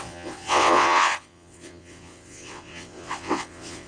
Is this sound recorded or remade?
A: remade